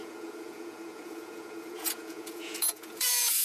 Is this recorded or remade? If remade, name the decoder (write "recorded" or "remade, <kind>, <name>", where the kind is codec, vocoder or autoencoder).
remade, vocoder, Vocos